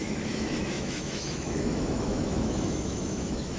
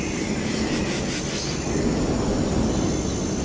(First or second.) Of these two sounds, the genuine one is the second